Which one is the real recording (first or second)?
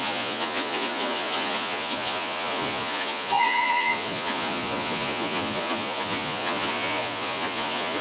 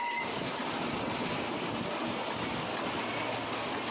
second